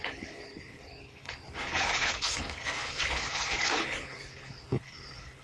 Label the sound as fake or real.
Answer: fake